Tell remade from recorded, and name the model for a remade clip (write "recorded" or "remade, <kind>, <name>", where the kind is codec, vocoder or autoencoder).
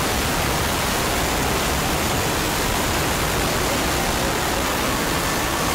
recorded